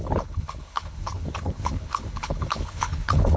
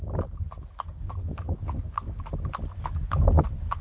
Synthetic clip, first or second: first